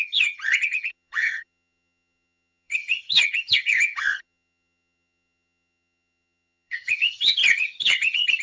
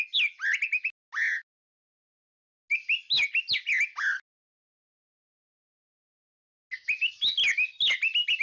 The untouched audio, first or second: second